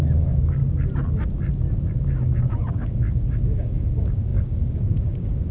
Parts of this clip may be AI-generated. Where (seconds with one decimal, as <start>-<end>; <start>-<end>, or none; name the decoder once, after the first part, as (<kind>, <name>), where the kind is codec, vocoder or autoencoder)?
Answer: 0.0-0.6 (codec, DAC); 2.0-5.5